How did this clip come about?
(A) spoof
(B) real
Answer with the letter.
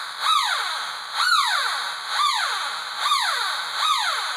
B